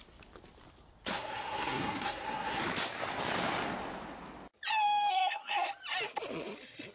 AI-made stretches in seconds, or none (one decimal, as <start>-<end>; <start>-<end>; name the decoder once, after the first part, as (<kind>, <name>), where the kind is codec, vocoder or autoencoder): 1.1-2.6 (codec, SNAC); 5.1-5.7